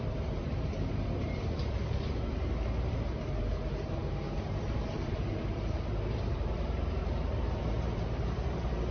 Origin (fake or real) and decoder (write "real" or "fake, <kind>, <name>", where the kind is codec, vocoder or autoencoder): fake, vocoder, BigVGAN v2